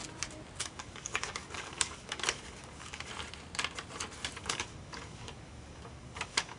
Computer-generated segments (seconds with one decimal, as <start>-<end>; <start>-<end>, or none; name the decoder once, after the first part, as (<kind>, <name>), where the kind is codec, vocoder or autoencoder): 0.6-3.1 (codec, DAC); 4.4-6.6